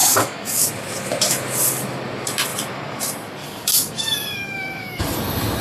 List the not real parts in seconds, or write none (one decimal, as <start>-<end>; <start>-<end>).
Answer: 0.0-0.7; 3.4-5.0